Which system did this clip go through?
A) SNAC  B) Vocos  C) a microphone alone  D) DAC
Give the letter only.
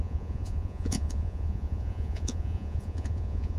B